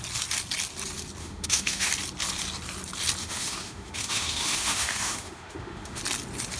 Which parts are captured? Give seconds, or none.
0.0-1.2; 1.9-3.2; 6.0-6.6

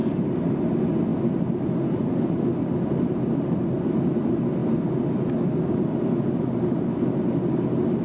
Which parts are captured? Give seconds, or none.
0.6-8.0

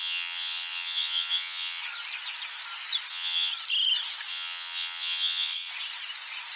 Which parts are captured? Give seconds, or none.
1.8-3.1; 3.5-4.3; 5.7-6.6

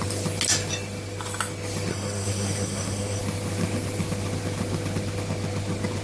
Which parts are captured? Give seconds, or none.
0.0-1.9; 3.2-6.0

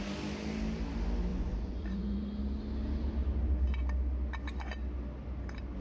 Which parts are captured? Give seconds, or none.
0.0-1.3; 2.2-5.8

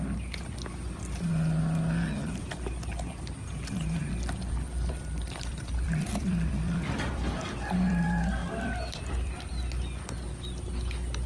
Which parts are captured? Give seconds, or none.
0.0-4.0; 8.0-8.4; 9.6-11.3